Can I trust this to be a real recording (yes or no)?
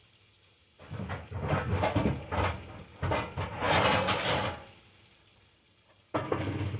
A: yes